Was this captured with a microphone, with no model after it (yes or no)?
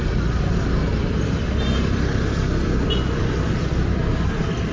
yes